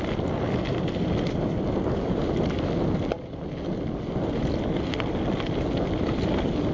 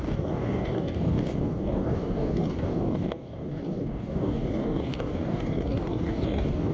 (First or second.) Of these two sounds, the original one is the first